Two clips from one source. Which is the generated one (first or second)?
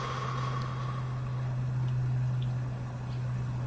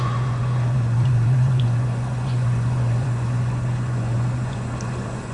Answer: second